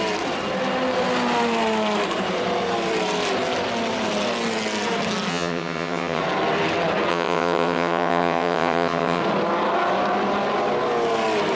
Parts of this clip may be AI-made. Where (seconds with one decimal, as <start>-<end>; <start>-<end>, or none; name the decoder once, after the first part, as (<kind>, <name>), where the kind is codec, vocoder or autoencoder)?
5.3-6.2 (vocoder, HiFi-GAN); 7.1-9.2